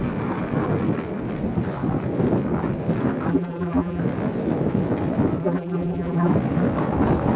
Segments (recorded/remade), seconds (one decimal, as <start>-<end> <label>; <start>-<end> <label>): 0.0-3.3 recorded; 3.3-4.0 remade; 4.0-5.4 recorded; 5.4-6.3 remade; 6.3-7.4 recorded